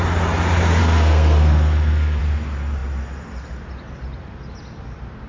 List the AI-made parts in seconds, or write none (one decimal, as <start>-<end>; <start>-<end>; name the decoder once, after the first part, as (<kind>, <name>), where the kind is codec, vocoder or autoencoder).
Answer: 0.8-2.2 (codec, SNAC)